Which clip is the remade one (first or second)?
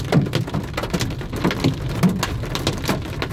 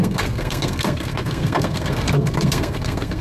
second